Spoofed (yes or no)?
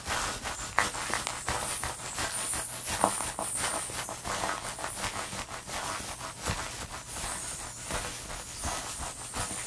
no